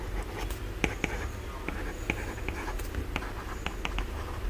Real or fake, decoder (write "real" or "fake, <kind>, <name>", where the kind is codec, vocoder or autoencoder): real